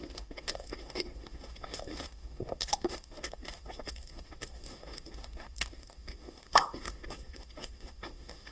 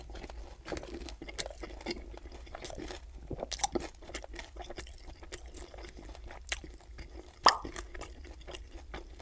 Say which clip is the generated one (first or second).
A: first